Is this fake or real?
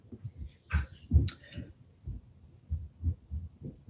real